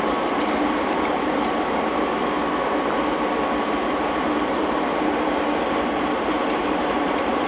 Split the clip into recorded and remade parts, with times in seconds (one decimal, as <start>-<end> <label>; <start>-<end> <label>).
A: 0.0-2.4 remade; 2.4-3.6 recorded; 3.6-7.5 remade